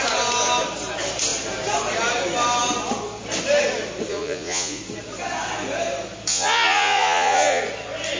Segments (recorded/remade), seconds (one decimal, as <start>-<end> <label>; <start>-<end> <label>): 0.0-4.1 recorded; 4.1-4.8 remade; 4.8-6.3 recorded; 6.3-7.6 remade; 7.6-8.2 recorded